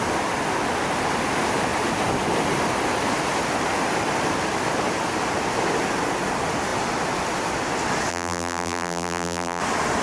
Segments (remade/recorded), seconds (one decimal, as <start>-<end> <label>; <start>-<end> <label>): 0.0-8.1 recorded; 8.1-9.6 remade; 9.6-10.0 recorded

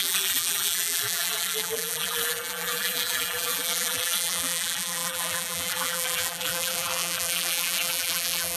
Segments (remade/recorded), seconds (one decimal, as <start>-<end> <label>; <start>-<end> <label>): 0.0-8.6 remade

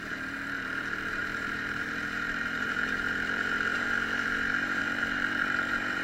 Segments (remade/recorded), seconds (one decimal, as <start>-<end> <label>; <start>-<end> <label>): 0.0-6.0 remade